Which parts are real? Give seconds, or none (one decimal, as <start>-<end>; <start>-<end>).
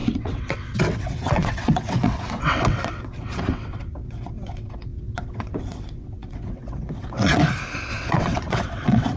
7.4-7.9